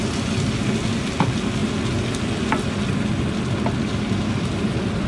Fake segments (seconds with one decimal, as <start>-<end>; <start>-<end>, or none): none